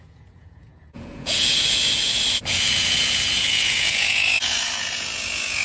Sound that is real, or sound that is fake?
fake